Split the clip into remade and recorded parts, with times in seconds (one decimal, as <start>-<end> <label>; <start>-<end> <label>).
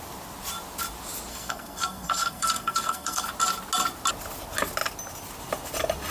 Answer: 0.0-1.3 recorded; 1.3-3.3 remade; 3.3-6.1 recorded